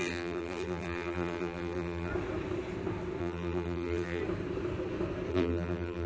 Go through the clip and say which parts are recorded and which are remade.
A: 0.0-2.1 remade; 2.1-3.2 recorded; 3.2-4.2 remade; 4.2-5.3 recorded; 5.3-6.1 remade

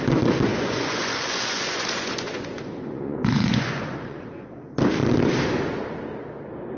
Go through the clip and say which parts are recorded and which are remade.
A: 0.0-0.5 recorded; 0.5-4.6 remade; 4.6-6.8 recorded

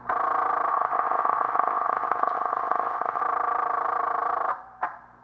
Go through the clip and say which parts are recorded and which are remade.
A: 0.0-0.7 recorded; 0.7-3.2 remade; 3.2-5.2 recorded